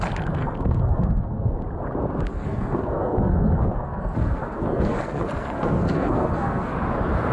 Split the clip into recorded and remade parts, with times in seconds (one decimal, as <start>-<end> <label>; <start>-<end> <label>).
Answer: 0.0-0.4 recorded; 0.4-1.5 remade; 1.5-2.3 recorded; 2.3-6.7 remade; 6.7-7.3 recorded